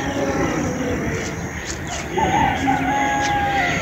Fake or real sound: real